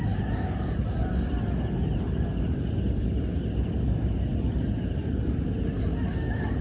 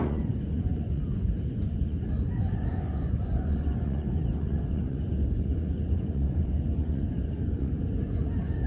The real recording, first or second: first